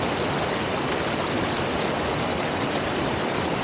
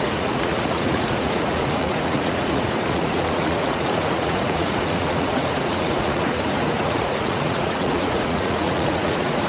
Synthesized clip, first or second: second